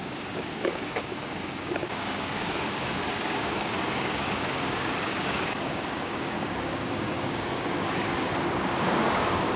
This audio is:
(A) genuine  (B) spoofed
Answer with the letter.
B